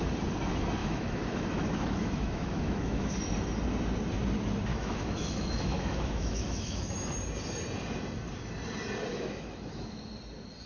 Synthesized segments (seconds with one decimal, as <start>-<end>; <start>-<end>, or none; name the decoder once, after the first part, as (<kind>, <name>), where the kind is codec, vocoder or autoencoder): 0.8-3.1 (autoencoder, DAC-VAE); 4.7-6.9; 9.1-10.0